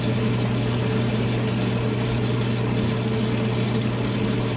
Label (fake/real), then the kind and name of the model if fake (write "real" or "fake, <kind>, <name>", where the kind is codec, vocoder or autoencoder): real